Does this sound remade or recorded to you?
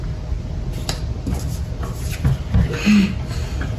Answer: recorded